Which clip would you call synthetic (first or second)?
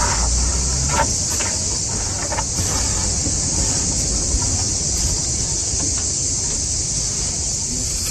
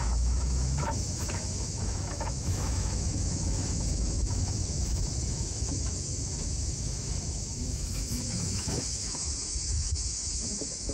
second